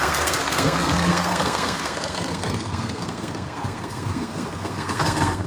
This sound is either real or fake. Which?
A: fake